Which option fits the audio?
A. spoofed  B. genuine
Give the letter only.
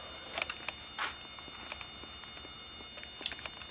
B